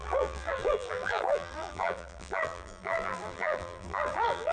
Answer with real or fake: fake